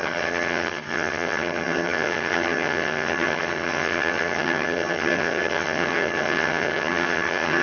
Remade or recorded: remade